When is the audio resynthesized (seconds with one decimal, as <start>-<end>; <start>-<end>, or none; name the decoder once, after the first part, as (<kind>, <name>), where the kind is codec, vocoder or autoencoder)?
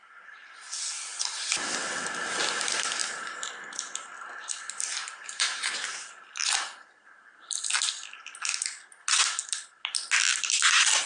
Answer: 3.0-3.5 (vocoder, BigVGAN v2); 5.0-6.1